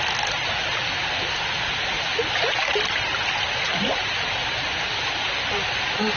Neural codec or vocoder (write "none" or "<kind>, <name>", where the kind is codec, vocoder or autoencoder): none